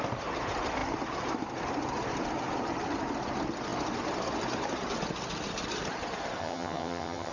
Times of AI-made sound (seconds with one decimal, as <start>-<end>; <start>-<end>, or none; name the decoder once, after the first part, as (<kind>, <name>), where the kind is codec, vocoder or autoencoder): 6.4-7.3 (vocoder, HiFi-GAN)